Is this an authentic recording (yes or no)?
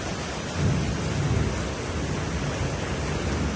yes